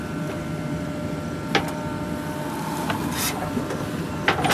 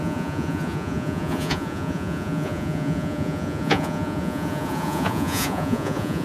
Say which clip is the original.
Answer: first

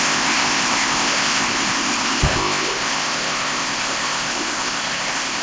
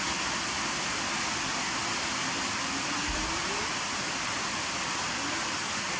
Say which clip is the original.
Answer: second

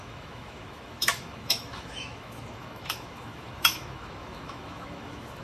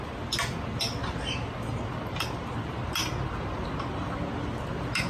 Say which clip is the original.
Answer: second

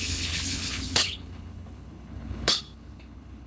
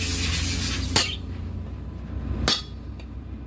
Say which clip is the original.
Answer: second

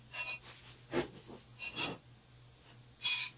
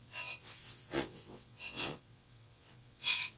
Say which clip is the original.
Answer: first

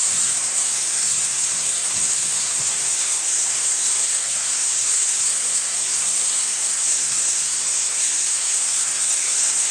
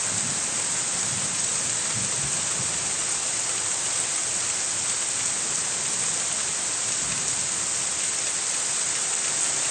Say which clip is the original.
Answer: second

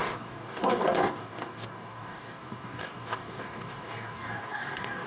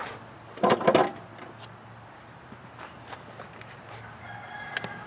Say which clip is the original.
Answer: second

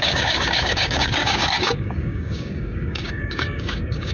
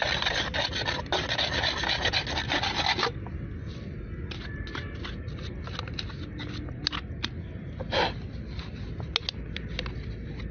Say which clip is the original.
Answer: second